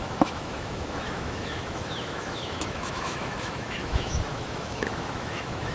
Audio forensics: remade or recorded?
remade